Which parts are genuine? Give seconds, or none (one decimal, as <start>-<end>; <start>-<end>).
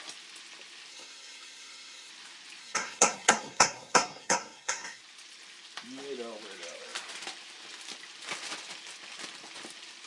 0.0-0.9; 2.1-2.6; 5.0-10.1